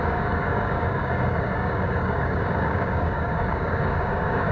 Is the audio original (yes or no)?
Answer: no